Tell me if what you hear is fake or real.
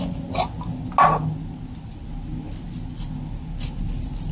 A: real